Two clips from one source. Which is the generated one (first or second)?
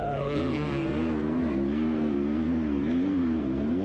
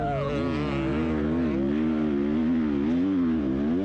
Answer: first